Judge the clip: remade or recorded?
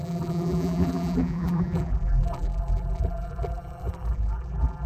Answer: remade